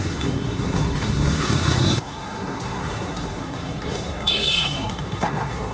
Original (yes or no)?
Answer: no